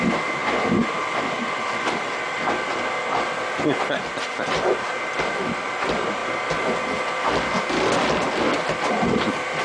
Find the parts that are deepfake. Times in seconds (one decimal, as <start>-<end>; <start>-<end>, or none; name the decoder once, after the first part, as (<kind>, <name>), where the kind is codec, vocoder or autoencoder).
none